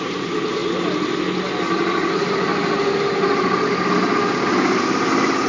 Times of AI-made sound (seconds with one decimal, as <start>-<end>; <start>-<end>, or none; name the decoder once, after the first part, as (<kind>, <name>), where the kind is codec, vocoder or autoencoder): none